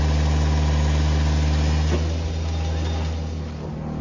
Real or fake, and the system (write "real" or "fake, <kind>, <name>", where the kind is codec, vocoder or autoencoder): real